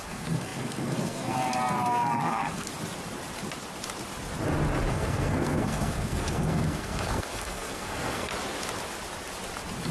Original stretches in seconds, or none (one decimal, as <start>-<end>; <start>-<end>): 2.7-4.9; 8.3-9.9